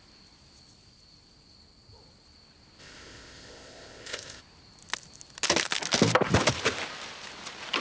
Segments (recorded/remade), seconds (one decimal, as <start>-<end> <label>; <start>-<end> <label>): 0.0-2.8 recorded; 2.8-4.4 remade; 4.4-7.8 recorded